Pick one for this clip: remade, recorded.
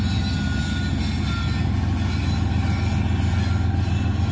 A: recorded